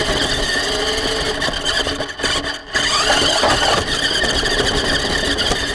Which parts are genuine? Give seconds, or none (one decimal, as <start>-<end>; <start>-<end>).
0.0-5.7